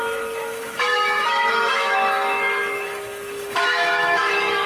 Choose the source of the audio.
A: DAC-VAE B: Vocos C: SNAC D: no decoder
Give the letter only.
A